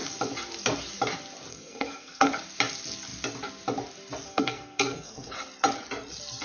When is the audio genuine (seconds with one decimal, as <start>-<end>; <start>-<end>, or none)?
0.0-1.5; 2.3-4.3; 5.3-6.4